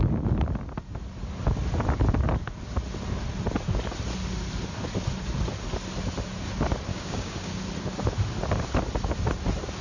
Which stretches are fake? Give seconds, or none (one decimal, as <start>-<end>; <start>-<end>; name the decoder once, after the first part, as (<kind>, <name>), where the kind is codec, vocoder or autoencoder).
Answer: 6.9-7.6 (codec, DAC)